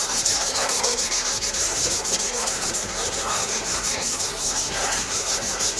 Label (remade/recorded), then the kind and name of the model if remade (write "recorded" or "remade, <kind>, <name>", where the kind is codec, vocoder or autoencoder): remade, codec, SNAC